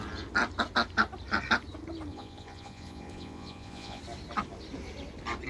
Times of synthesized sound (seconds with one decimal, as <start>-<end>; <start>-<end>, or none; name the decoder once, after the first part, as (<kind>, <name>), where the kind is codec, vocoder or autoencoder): 2.1-4.0 (vocoder, Vocos)